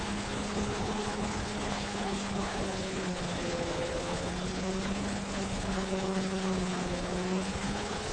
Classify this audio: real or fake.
fake